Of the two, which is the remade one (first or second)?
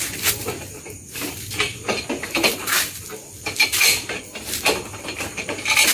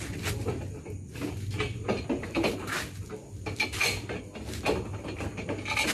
first